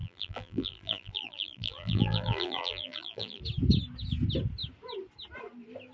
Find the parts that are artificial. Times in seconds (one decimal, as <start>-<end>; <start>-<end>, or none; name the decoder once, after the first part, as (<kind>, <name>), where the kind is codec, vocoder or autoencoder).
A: 0.0-3.4 (vocoder, BigVGAN v2)